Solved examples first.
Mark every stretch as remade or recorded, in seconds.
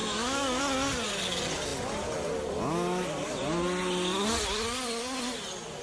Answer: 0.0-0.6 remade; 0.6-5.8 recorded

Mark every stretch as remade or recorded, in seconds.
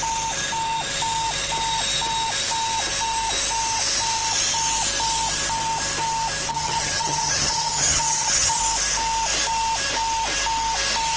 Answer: 0.0-6.5 recorded; 6.5-8.6 remade; 8.6-11.2 recorded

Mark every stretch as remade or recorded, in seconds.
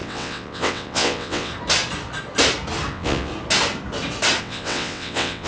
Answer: 0.0-1.5 remade; 1.5-2.9 recorded; 2.9-3.3 remade; 3.3-4.4 recorded; 4.4-5.5 remade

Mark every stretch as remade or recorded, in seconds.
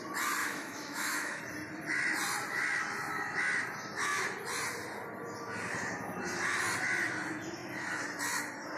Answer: 0.0-0.4 recorded; 0.4-1.4 remade; 1.4-8.8 recorded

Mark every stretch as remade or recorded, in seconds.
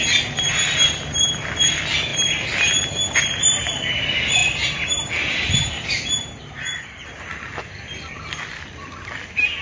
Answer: 0.0-9.6 recorded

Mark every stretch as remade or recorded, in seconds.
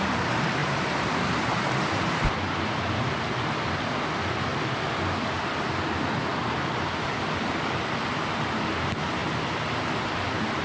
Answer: 0.0-0.6 recorded; 0.6-2.2 remade; 2.2-10.6 recorded